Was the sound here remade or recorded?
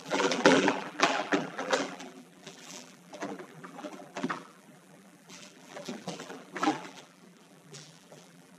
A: remade